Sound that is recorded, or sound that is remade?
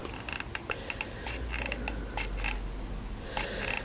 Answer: recorded